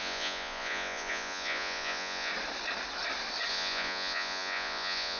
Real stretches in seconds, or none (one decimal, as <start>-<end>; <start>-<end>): 2.3-3.5